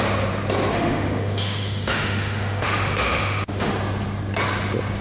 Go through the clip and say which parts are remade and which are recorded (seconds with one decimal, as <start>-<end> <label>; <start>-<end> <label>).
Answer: 0.0-0.7 recorded; 0.7-3.7 remade; 3.7-5.0 recorded